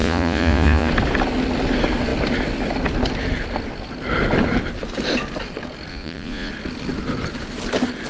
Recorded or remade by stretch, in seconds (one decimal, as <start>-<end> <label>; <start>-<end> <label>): 0.0-0.9 remade; 0.9-5.9 recorded; 5.9-6.5 remade; 6.5-8.1 recorded